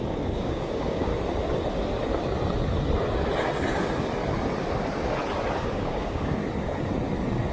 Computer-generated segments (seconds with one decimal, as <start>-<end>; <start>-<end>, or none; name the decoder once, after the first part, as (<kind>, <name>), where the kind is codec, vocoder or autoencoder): 0.0-1.1 (codec, DAC); 5.6-6.4